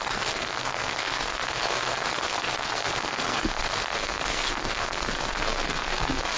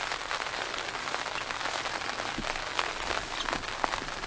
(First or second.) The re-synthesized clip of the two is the first